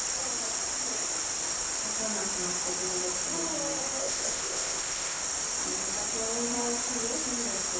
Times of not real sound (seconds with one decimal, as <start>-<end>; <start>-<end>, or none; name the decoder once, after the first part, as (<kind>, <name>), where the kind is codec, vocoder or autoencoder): 4.0-5.2 (codec, ZipCodec)